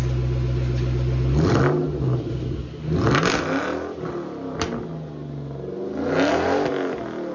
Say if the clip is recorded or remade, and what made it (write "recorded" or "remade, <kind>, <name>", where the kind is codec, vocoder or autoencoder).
recorded